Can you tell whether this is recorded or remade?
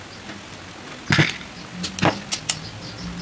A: recorded